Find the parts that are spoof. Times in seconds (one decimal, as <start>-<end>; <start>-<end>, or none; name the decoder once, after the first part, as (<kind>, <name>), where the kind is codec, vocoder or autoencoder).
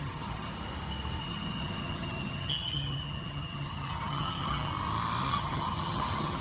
0.0-0.5 (vocoder, HiFi-GAN); 1.2-4.7; 5.3-6.4